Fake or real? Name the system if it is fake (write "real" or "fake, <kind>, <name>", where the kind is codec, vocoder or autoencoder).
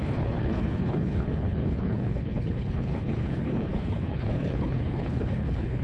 fake, codec, HILCodec